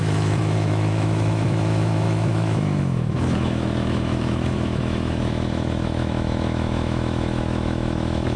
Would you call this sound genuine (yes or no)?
no